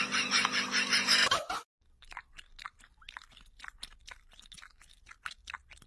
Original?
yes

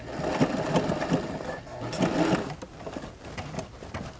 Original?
yes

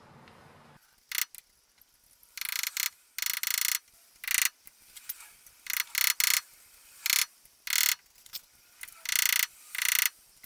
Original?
yes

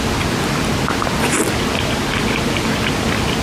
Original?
yes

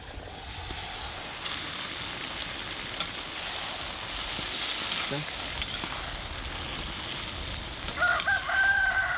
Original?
yes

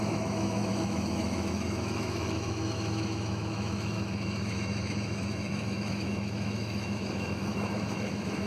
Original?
no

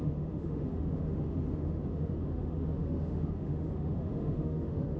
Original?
no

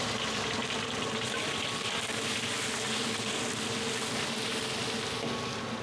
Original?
yes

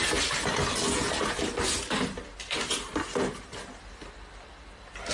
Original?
yes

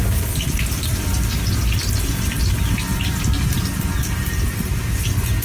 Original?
yes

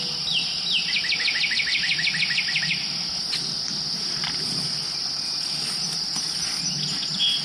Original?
yes